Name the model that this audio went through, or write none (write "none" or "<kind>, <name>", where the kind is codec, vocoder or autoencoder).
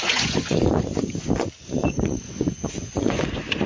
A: vocoder, Vocos